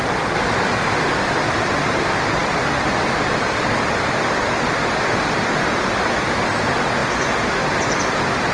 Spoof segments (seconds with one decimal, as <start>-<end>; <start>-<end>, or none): none